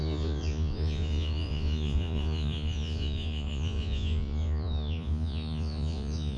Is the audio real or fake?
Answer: fake